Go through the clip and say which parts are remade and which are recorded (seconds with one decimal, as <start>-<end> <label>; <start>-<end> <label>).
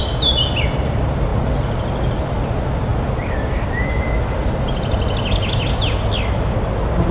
0.0-7.1 recorded